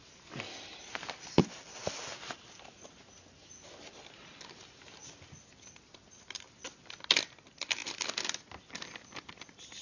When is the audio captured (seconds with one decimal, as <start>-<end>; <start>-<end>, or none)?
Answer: 0.0-9.8